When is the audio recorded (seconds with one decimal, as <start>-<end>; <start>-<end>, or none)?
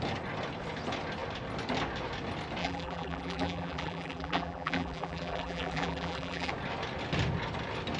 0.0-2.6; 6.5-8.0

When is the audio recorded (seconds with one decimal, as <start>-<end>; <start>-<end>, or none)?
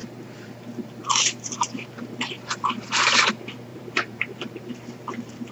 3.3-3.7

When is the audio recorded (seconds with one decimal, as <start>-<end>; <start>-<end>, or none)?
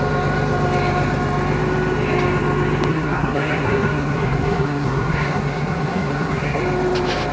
0.0-2.9; 6.6-7.3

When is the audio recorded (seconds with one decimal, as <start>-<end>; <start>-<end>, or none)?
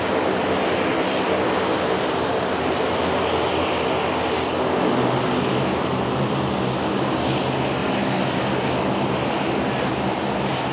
0.0-10.7